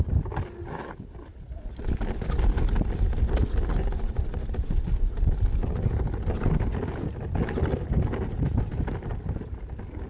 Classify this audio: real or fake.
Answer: real